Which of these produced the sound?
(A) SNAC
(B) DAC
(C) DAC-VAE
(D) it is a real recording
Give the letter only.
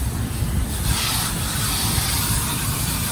D